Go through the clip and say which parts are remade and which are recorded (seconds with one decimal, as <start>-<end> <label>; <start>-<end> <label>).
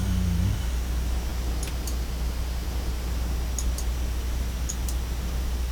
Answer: 0.0-5.7 recorded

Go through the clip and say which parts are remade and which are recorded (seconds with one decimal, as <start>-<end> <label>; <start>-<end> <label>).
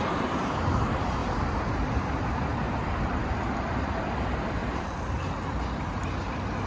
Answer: 0.0-1.2 recorded; 1.2-4.0 remade; 4.0-4.6 recorded; 4.6-5.2 remade; 5.2-6.7 recorded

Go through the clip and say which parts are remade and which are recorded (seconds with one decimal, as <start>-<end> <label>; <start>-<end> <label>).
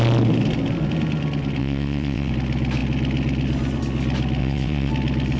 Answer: 0.0-1.6 recorded; 1.6-2.3 remade; 2.3-4.4 recorded; 4.4-4.9 remade; 4.9-5.4 recorded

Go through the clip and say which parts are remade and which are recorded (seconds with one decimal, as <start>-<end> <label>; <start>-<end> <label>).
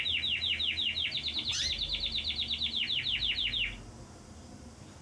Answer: 0.0-5.0 recorded